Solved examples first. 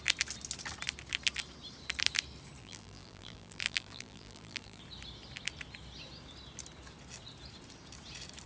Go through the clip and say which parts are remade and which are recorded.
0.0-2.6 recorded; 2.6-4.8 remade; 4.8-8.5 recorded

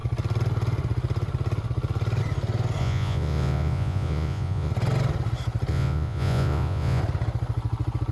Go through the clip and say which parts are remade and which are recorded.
0.0-2.8 recorded; 2.8-4.7 remade; 4.7-5.7 recorded; 5.7-7.0 remade; 7.0-8.1 recorded

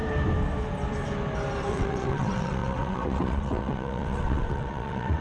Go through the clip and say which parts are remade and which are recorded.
0.0-1.7 recorded; 1.7-5.2 remade

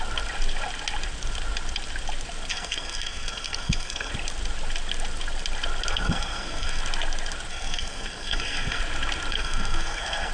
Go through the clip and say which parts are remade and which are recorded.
0.0-2.5 recorded; 2.5-4.1 remade; 4.1-5.9 recorded; 5.9-6.8 remade; 6.8-7.5 recorded; 7.5-8.8 remade; 8.8-9.3 recorded; 9.3-10.3 remade

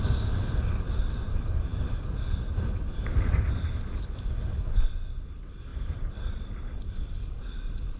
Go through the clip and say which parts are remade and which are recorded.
0.0-5.7 recorded; 5.7-7.6 remade; 7.6-8.0 recorded

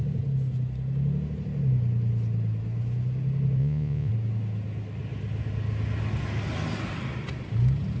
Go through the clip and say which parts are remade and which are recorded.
0.0-3.6 recorded; 3.6-4.1 remade; 4.1-8.0 recorded

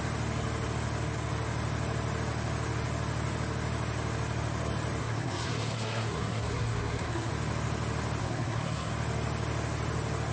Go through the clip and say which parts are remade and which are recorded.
0.0-5.0 recorded; 5.0-7.3 remade; 7.3-8.2 recorded; 8.2-8.9 remade; 8.9-10.3 recorded